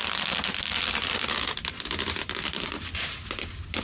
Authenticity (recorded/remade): recorded